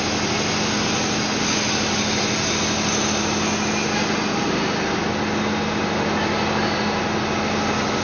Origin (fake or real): real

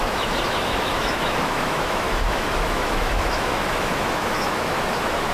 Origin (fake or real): fake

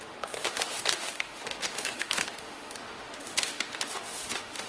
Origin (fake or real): fake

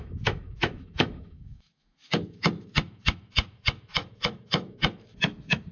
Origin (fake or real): fake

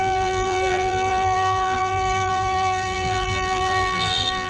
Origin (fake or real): fake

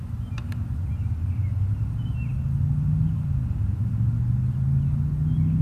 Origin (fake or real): real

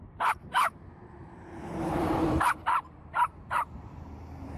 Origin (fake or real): fake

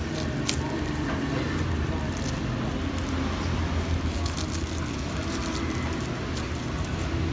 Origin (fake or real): real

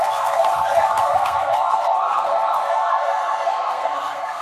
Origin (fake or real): fake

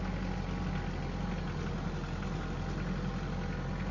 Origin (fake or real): real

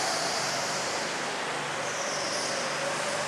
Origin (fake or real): real